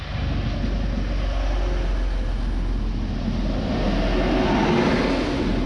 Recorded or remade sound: recorded